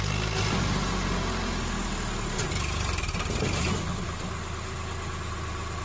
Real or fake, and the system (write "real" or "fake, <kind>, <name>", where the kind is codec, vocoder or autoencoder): real